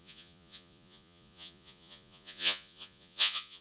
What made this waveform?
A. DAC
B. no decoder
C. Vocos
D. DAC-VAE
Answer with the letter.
C